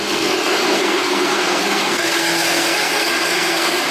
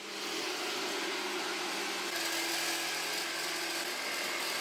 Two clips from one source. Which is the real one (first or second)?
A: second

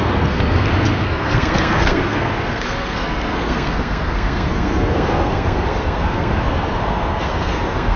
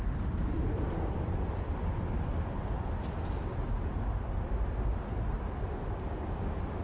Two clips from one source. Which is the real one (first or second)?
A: second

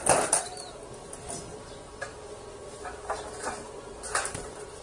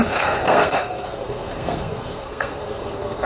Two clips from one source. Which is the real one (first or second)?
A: first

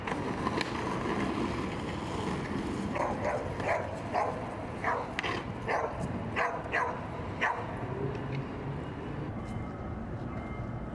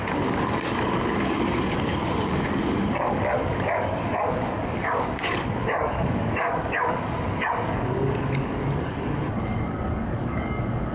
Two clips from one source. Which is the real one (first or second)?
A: first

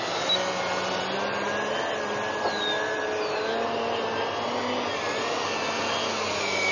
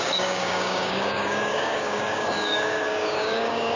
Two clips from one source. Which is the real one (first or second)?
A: first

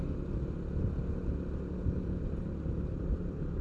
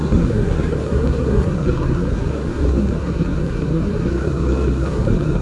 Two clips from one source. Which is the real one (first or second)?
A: first